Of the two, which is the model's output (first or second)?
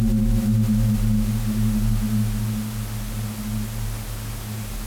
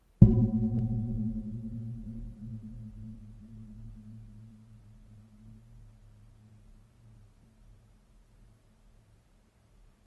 second